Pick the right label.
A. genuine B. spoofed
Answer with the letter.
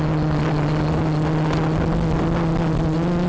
A